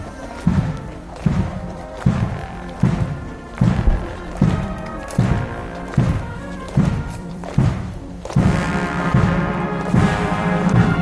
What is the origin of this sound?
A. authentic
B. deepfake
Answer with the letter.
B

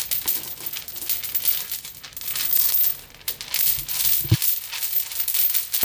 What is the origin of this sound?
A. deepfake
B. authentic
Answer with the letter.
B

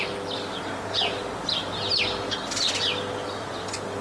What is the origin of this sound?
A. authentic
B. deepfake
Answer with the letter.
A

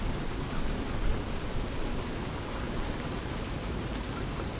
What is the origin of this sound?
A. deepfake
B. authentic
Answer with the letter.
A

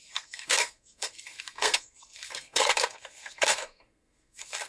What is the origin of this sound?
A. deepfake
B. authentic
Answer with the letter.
A